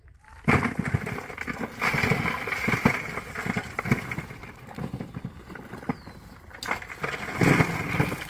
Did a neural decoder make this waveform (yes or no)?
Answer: no